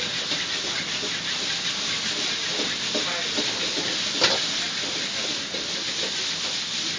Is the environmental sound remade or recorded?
recorded